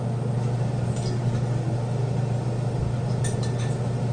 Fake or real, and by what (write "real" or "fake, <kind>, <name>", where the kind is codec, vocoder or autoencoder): real